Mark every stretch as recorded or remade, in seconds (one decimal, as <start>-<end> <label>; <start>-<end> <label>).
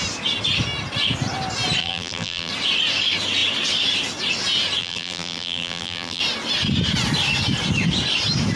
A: 0.0-1.8 recorded; 1.8-2.5 remade; 2.5-4.8 recorded; 4.8-6.2 remade; 6.2-8.6 recorded